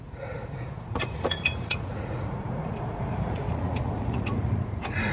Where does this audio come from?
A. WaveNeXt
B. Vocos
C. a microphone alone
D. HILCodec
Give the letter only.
B